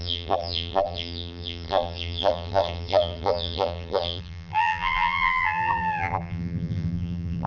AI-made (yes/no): yes